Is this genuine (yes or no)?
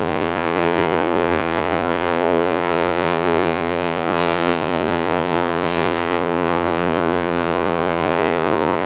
no